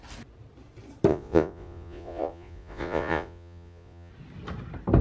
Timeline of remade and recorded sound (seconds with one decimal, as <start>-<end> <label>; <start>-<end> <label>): 0.0-1.1 recorded; 1.1-4.1 remade; 4.1-5.0 recorded